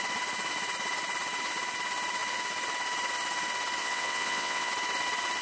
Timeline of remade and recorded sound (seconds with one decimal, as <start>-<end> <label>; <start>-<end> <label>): 0.0-3.8 recorded; 3.8-4.7 remade; 4.7-5.4 recorded